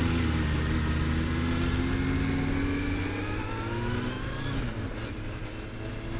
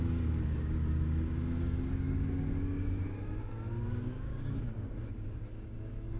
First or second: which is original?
first